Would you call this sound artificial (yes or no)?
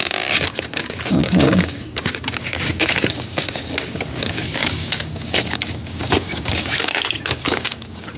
yes